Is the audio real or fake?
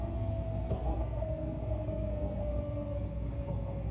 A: fake